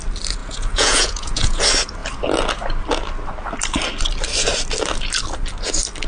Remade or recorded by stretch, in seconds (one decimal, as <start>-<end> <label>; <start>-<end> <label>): 0.0-0.4 recorded; 0.4-1.6 remade; 1.6-6.1 recorded